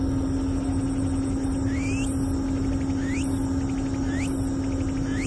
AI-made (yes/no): no